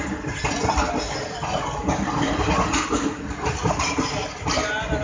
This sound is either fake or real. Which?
real